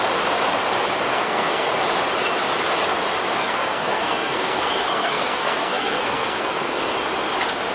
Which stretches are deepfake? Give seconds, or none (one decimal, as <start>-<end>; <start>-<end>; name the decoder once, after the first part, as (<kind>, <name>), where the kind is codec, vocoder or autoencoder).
1.1-1.7 (codec, SNAC); 3.4-6.8